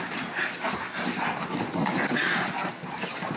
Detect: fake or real real